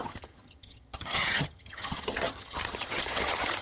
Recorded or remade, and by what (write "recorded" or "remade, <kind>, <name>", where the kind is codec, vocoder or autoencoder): remade, vocoder, HiFi-GAN